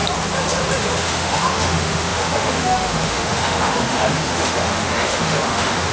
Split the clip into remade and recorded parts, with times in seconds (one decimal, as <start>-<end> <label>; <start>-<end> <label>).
0.0-0.8 recorded; 0.8-5.9 remade